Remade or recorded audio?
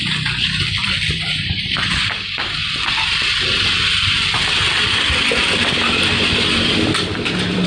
remade